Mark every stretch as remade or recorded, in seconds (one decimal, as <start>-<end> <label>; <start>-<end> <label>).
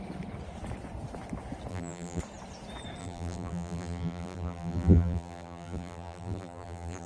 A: 0.0-1.7 recorded; 1.7-2.2 remade; 2.2-3.0 recorded; 3.0-7.1 remade